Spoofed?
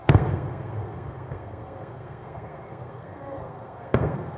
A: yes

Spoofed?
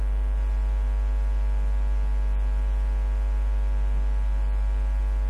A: no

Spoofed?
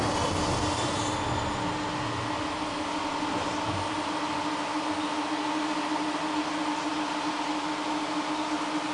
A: no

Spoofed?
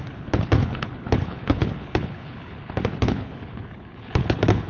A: yes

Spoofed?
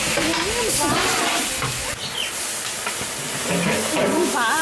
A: no